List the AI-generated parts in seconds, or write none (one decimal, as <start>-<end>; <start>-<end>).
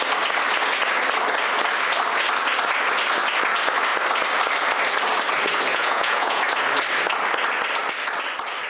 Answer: 5.7-6.4